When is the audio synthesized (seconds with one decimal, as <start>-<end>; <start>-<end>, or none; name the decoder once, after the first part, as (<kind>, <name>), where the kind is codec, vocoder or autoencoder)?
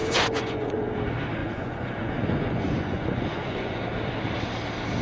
0.0-0.9 (vocoder, Vocos); 1.4-3.8